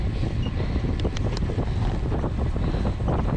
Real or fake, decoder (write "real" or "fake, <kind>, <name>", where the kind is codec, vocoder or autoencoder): real